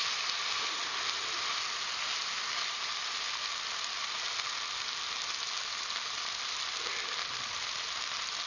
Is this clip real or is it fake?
real